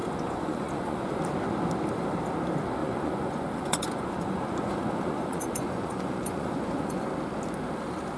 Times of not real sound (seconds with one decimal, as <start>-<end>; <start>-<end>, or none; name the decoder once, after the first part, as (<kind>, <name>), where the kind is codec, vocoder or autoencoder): 0.0-1.2 (vocoder, Vocos); 2.8-7.1